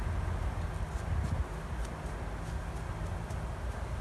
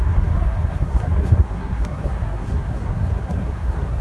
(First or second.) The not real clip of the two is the second